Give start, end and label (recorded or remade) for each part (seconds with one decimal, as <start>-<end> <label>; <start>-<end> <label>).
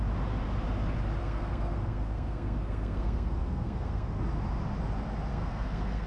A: 0.0-1.2 recorded; 1.2-4.2 remade; 4.2-5.3 recorded; 5.3-6.1 remade